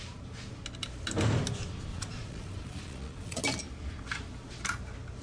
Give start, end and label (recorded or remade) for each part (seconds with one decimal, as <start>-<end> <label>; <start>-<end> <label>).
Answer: 0.0-1.9 recorded; 1.9-3.4 remade; 3.4-5.2 recorded